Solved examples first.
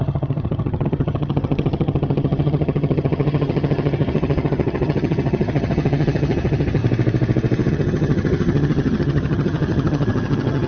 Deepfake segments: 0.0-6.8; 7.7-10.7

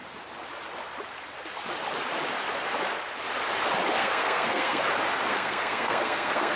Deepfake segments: 4.0-4.8; 5.3-6.6

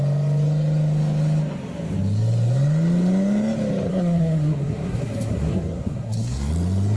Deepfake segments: 3.9-6.5

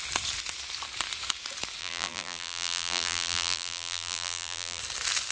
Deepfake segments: 1.8-4.8

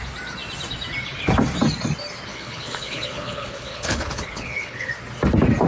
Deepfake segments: 2.3-4.9